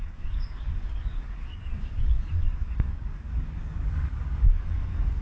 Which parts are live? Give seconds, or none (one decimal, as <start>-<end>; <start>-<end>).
none